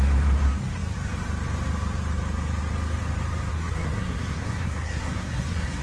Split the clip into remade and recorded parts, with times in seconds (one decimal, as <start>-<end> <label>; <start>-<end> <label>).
0.0-3.5 recorded; 3.5-5.8 remade